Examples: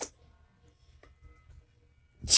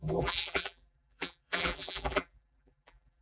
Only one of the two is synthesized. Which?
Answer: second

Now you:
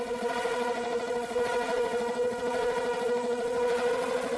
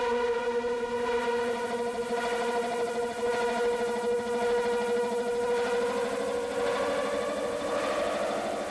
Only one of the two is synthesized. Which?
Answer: first